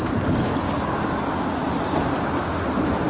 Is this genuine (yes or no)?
yes